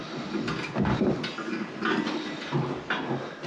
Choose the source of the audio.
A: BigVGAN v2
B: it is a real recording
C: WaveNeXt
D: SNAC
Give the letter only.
B